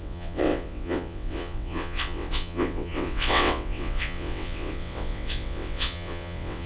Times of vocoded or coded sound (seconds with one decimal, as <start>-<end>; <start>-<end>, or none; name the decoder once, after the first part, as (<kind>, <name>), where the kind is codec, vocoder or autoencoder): 0.0-6.7 (vocoder, WaveNeXt)

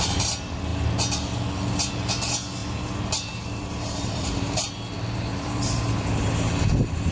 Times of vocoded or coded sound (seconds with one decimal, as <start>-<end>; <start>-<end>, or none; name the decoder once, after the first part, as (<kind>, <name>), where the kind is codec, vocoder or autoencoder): 2.6-4.7 (vocoder, BigVGAN v2); 5.3-6.5

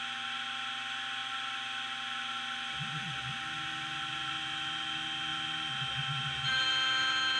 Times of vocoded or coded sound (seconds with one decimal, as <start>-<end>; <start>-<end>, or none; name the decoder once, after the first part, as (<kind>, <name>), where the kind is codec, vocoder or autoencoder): none